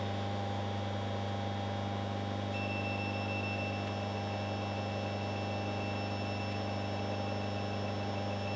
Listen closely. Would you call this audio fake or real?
real